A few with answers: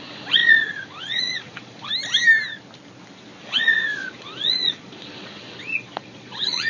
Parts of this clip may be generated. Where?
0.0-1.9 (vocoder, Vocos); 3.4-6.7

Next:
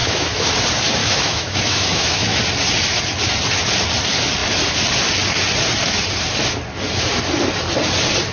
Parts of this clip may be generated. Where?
0.0-0.5 (autoencoder, DAC-VAE); 1.0-2.4

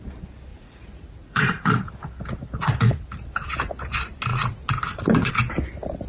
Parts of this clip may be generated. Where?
0.5-1.9 (vocoder, Vocos); 2.6-3.2; 4.3-5.3

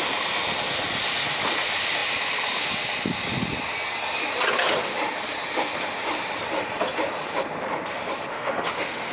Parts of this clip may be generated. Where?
8.3-9.1 (autoencoder, DAC-VAE)

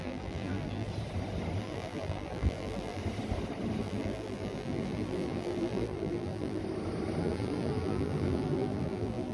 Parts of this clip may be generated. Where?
0.0-0.9 (vocoder, BigVGAN v2); 1.6-3.0; 3.8-6.6; 7.2-9.3

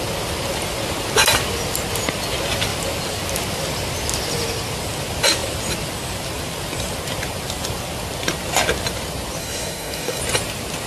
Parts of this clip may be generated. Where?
9.4-10.2 (codec, DAC)